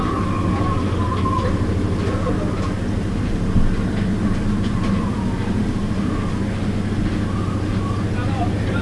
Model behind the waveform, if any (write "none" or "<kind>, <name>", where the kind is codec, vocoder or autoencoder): none